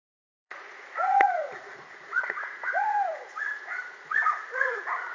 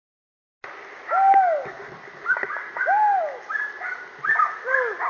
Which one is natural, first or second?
second